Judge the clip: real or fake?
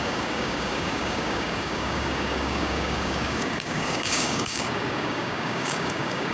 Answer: fake